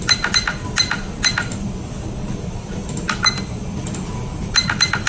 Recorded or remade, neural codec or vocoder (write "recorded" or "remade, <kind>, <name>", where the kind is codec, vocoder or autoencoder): recorded